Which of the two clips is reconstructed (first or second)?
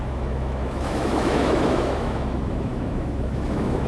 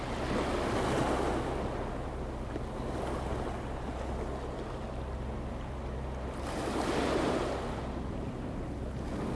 first